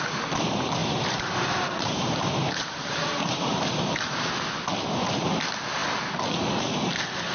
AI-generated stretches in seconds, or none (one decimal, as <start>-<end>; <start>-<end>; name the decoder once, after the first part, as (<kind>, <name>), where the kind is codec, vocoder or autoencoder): 0.8-3.8 (vocoder, BigVGAN v2)